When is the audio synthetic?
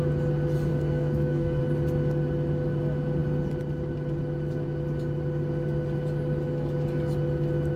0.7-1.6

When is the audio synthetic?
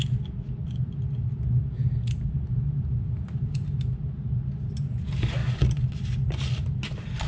none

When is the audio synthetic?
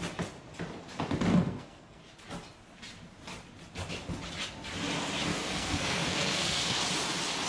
1.3-2.0; 5.3-6.8